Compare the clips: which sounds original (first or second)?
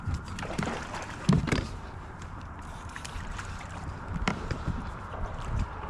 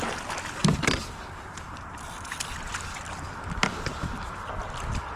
second